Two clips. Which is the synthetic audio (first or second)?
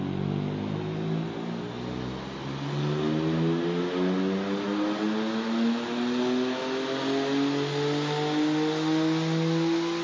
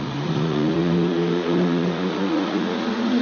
second